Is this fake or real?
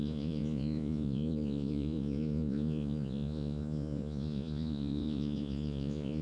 fake